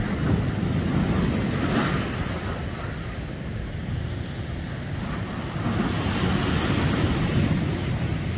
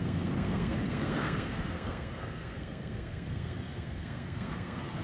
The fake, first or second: second